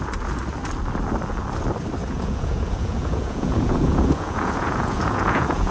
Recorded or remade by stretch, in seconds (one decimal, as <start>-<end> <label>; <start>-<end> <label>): 0.0-2.0 recorded; 2.0-5.7 remade